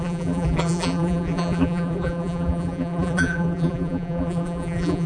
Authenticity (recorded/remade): remade